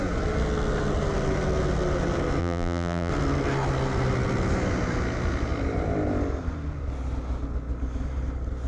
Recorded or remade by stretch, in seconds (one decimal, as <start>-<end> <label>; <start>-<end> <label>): 0.0-2.4 recorded; 2.4-3.1 remade; 3.1-8.7 recorded